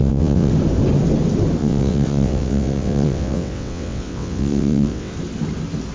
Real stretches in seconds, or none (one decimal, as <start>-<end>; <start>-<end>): 0.5-1.6; 5.1-5.9